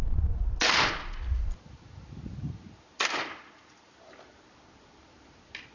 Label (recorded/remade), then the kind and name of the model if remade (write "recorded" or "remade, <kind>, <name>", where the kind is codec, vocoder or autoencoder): recorded